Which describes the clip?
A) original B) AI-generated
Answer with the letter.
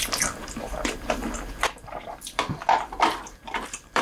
B